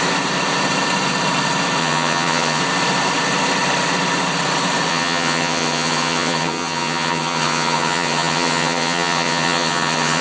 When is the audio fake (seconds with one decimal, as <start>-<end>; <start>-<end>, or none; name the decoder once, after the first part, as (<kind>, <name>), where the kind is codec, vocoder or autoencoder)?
1.8-2.6 (vocoder, HiFi-GAN); 4.9-10.2